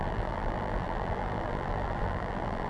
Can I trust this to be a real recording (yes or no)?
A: no